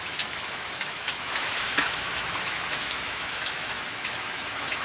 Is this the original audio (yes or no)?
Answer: no